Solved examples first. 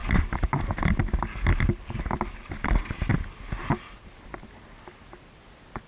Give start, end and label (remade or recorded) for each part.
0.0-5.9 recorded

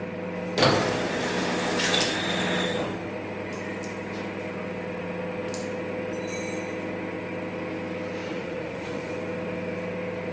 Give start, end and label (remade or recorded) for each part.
0.0-8.3 recorded; 8.3-9.1 remade; 9.1-10.3 recorded

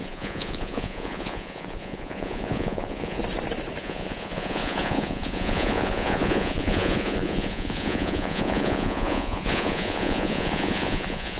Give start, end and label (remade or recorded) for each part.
0.0-3.2 remade; 3.2-3.8 recorded; 3.8-11.4 remade

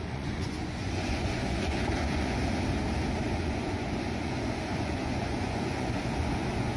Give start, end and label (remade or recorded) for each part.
0.0-2.4 remade; 2.4-3.2 recorded; 3.2-6.8 remade

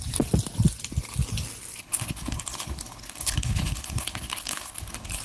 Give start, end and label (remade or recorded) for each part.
0.0-1.8 recorded; 1.8-5.2 remade